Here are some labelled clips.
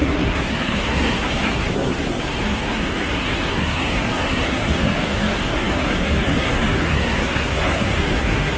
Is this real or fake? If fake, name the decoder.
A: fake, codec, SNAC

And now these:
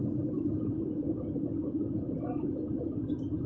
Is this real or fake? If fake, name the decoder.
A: real